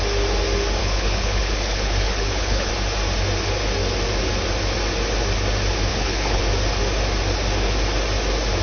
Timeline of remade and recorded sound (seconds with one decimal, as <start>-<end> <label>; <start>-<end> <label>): 0.0-0.8 recorded; 0.8-2.7 remade; 2.7-5.9 recorded; 5.9-6.4 remade; 6.4-8.6 recorded